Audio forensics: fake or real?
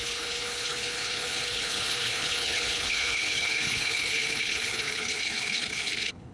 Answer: fake